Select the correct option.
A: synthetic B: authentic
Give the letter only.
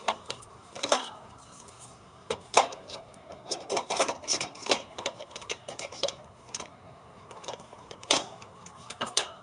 A